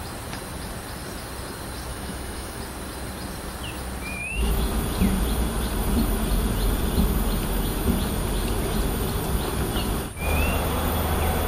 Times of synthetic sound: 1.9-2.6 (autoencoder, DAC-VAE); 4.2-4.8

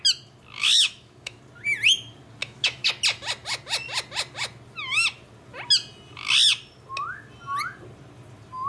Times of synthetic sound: 0.6-1.4 (autoencoder, DAC-VAE); 2.4-2.9

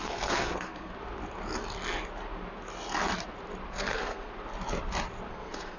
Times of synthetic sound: 0.0-0.9 (codec, SNAC); 3.7-4.3; 5.3-5.8

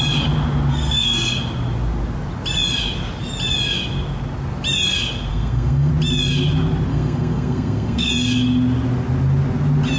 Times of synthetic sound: 0.7-1.4 (codec, SNAC); 5.3-5.9; 6.9-8.1

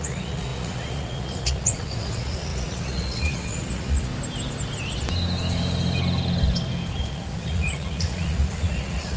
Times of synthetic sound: 0.0-4.1 (vocoder, Vocos); 7.0-9.2

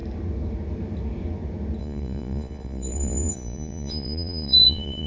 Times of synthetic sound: 1.8-5.1 (vocoder, Vocos)

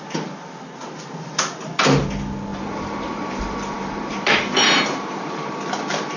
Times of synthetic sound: 2.5-5.5 (vocoder, BigVGAN v2)

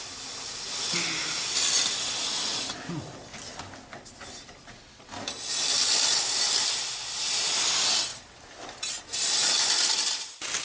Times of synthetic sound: 8.1-8.9 (vocoder, BigVGAN v2)